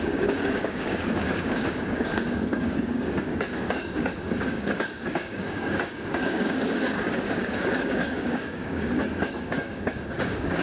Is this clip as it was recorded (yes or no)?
no